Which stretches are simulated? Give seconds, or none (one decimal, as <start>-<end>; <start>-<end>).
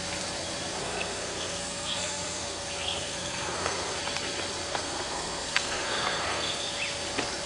0.8-4.0; 4.7-6.7